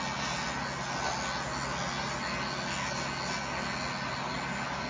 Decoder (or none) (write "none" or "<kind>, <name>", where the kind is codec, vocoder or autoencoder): none